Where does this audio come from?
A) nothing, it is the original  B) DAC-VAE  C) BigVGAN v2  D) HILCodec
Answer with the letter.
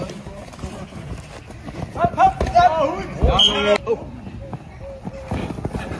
A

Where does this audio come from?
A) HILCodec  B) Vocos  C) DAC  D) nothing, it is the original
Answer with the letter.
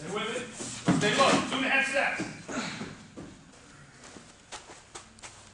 D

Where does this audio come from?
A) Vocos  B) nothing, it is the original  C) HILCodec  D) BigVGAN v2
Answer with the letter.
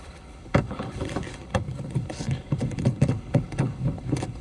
C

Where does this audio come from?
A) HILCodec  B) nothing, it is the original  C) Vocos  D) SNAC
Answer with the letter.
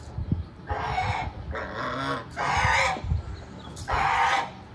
B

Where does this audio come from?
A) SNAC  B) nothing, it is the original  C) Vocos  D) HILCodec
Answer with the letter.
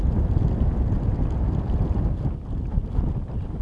B